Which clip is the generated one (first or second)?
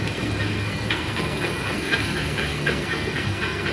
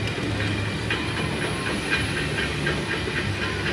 first